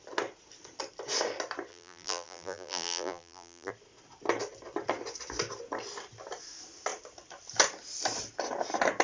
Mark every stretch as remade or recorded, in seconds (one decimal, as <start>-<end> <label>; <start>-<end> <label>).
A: 0.0-1.7 recorded; 1.7-3.7 remade; 3.7-9.0 recorded